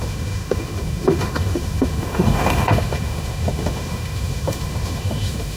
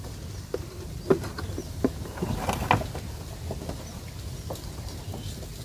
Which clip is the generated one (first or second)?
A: first